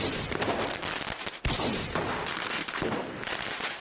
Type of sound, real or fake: real